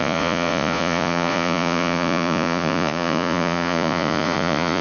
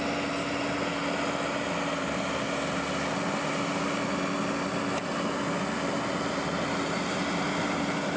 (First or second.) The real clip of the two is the second